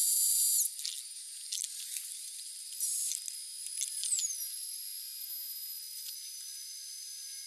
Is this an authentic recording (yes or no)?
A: yes